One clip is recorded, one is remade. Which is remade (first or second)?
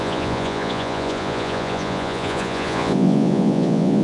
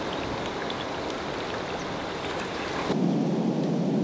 first